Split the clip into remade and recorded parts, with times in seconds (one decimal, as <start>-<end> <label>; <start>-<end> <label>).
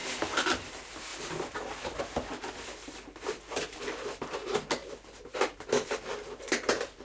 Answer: 0.0-0.7 recorded; 0.7-1.1 remade; 1.1-2.0 recorded; 2.0-4.8 remade; 4.8-5.7 recorded; 5.7-7.0 remade